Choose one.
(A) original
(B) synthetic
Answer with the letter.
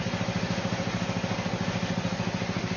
A